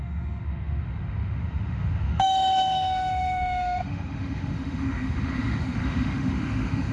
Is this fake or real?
fake